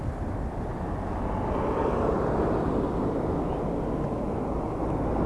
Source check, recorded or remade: recorded